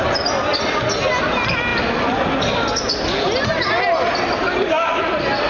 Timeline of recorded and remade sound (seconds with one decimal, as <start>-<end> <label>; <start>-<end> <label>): 0.0-5.5 recorded